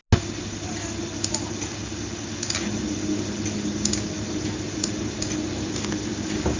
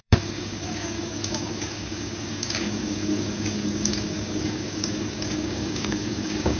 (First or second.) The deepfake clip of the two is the second